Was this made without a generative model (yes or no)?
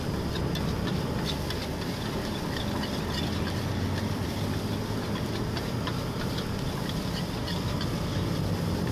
yes